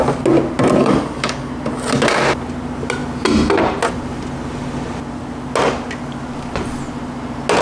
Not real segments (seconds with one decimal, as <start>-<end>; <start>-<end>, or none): 0.8-1.5